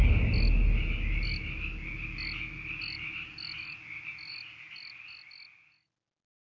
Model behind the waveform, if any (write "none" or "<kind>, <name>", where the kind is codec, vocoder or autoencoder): none